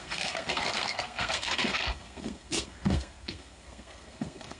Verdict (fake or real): fake